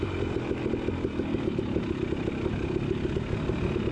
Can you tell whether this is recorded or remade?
recorded